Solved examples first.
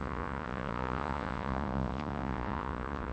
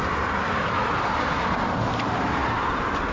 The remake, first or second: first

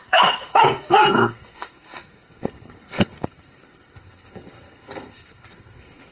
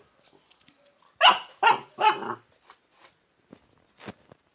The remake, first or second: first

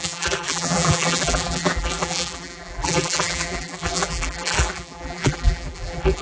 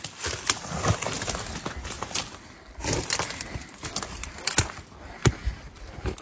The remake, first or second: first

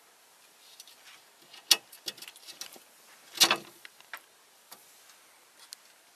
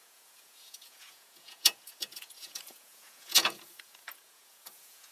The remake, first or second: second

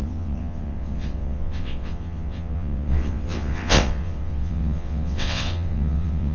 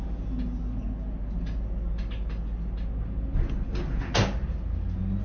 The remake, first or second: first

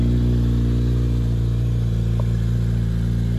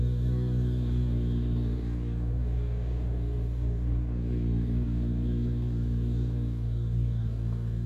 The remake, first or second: second